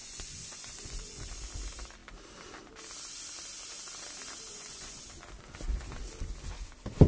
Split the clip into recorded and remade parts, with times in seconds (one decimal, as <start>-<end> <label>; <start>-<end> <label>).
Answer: 0.0-1.3 remade; 1.3-4.5 recorded; 4.5-5.0 remade; 5.0-7.1 recorded